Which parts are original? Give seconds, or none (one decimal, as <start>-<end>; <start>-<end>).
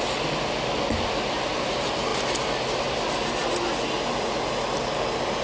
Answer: 0.0-5.4